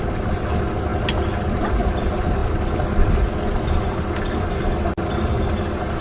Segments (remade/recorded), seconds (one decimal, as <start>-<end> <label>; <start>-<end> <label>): 0.0-6.0 recorded